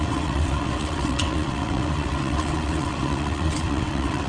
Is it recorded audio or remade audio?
remade